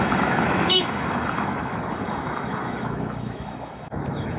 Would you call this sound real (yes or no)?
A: no